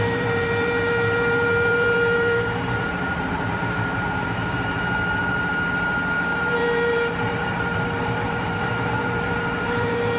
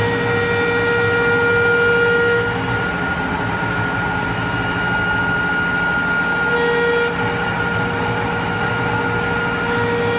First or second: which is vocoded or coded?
first